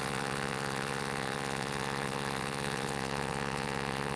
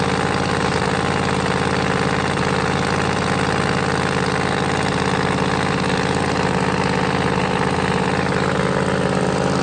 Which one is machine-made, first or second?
first